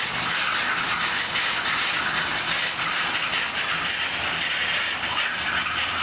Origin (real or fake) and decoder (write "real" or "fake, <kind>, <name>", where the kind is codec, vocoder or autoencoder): real